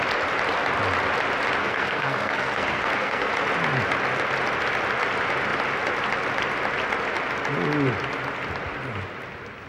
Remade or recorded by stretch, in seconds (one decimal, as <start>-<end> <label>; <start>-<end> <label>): 0.0-1.6 recorded; 1.6-3.3 remade; 3.3-9.7 recorded